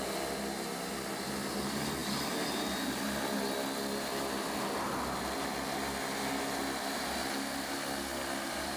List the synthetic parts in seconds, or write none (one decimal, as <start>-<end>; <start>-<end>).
none